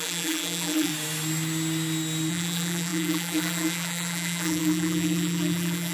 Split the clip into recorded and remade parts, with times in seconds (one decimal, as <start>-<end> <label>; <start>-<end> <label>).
0.0-0.9 remade; 0.9-2.3 recorded; 2.3-5.9 remade